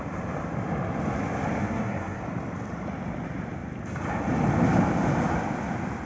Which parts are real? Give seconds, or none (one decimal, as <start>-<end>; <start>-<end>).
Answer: 0.0-1.6; 2.2-6.1